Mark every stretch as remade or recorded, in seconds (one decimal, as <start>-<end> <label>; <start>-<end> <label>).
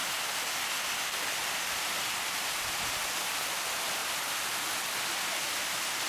0.0-6.1 recorded